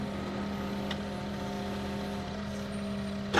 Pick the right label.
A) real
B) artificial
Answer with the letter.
A